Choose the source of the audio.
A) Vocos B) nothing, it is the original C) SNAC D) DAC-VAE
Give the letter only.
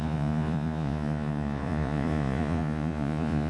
A